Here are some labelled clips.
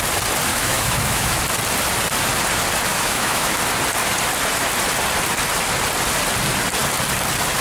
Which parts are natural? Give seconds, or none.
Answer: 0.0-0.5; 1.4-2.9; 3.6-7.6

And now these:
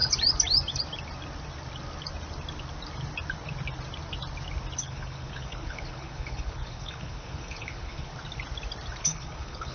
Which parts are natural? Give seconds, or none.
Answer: 0.0-4.8; 8.1-9.0

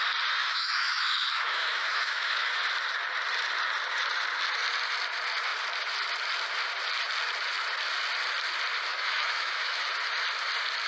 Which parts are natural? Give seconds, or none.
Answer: 0.0-0.4; 2.5-8.9; 9.9-10.9

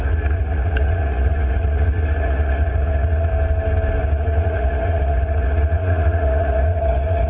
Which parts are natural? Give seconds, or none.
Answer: 3.3-4.0

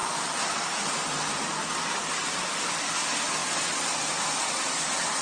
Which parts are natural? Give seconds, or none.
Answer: 0.0-3.4; 4.0-5.2

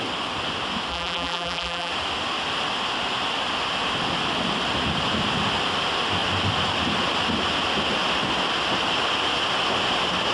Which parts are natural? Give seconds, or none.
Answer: 0.0-0.9; 1.9-10.3

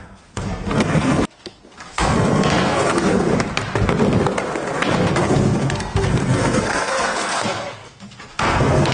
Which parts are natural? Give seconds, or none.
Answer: 3.3-5.1

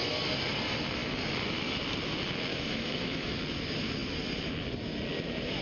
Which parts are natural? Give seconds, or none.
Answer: 0.0-2.5; 3.4-5.6